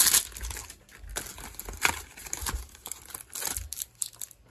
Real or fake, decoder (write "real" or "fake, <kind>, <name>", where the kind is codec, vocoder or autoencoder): real